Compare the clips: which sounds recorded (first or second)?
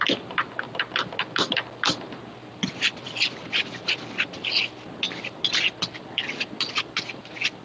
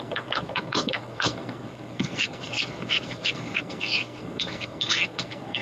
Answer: first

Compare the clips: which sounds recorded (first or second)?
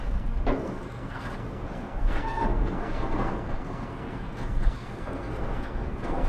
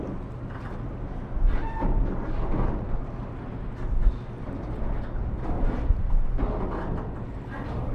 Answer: second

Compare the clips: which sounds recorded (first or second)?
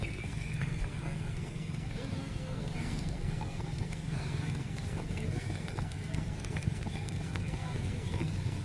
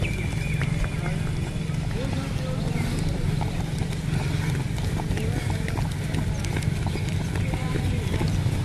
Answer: second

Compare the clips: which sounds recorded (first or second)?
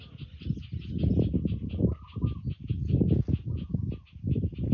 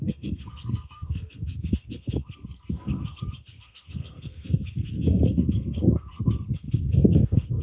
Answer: first